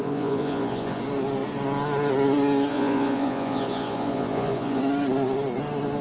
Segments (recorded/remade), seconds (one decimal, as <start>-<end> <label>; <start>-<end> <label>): 0.0-1.0 remade; 1.0-2.7 recorded; 2.7-4.8 remade; 4.8-6.0 recorded